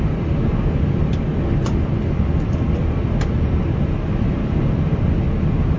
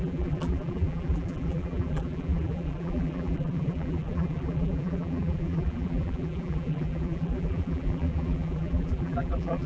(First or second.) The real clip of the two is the first